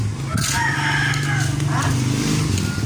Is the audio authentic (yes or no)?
yes